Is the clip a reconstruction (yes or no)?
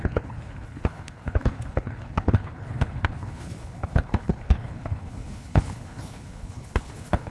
yes